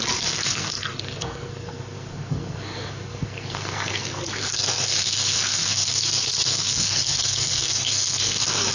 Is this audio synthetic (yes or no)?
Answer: yes